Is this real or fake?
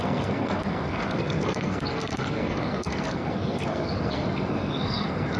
fake